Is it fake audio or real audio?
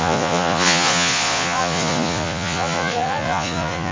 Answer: fake